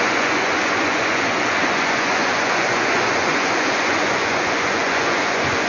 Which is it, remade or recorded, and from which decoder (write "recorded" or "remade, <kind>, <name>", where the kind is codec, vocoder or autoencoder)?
remade, vocoder, Vocos